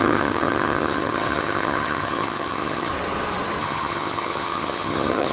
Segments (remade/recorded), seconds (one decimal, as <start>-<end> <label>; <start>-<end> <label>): 0.0-2.9 remade; 2.9-3.6 recorded; 3.6-5.3 remade